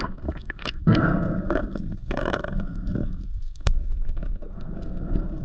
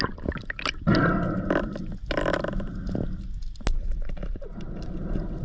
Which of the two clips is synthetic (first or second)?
first